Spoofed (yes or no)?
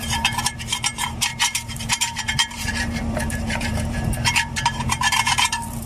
yes